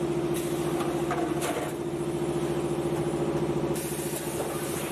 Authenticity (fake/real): real